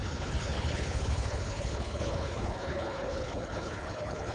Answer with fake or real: fake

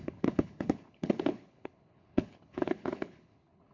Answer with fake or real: fake